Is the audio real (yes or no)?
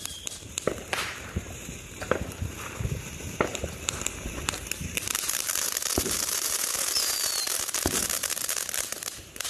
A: no